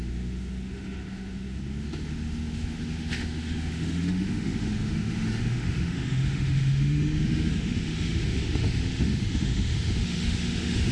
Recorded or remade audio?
remade